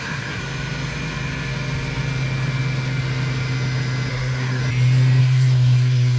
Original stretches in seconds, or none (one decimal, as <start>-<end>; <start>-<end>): 0.4-4.1; 4.6-5.2